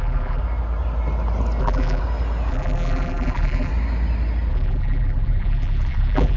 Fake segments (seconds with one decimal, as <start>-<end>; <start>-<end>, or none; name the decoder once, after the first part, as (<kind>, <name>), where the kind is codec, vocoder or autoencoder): 0.0-0.4 (vocoder, BigVGAN v2); 1.6-2.0; 2.5-3.7; 4.5-6.4